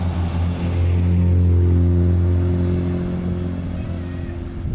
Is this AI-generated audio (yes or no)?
no